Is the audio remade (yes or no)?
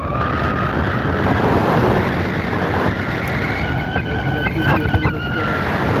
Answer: no